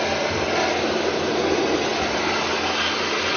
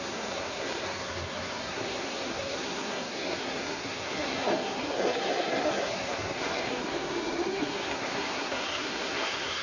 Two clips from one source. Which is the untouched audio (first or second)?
first